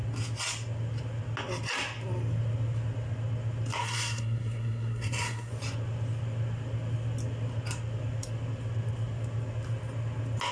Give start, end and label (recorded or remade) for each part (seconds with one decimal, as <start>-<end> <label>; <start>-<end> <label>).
0.0-3.8 recorded; 3.8-5.5 remade; 5.5-10.5 recorded